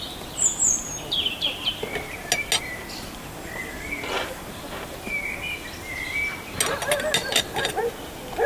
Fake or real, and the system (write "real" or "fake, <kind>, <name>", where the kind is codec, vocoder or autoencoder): real